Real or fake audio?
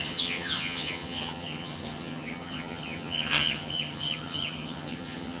fake